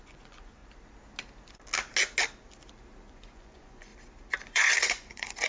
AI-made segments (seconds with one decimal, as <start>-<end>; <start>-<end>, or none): 0.0-0.6; 3.0-3.9; 4.4-5.5